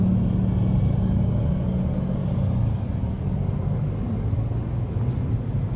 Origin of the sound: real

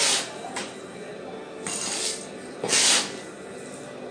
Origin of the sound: real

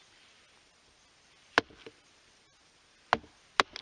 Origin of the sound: real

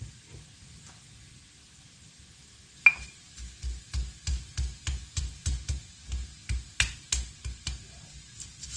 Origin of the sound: real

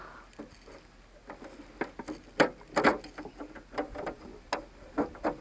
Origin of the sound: real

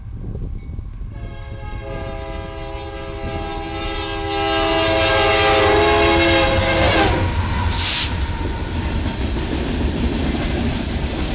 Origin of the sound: real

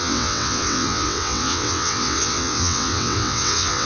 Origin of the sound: fake